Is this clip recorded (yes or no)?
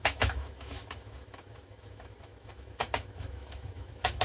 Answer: no